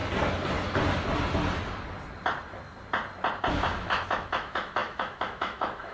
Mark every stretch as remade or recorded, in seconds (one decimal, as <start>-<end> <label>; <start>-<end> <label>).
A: 0.0-3.5 recorded; 3.5-5.9 remade